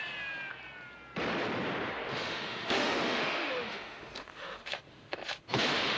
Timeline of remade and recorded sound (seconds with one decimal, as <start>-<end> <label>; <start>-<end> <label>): 0.0-2.1 recorded; 2.1-6.0 remade

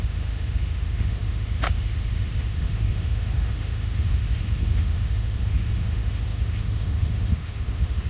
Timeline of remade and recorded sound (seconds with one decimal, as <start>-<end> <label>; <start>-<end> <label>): 0.0-8.1 remade